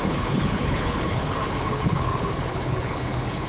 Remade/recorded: remade